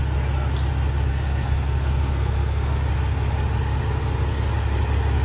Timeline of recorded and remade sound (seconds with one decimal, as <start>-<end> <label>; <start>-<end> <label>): 0.0-1.1 recorded; 1.1-2.8 remade; 2.8-5.2 recorded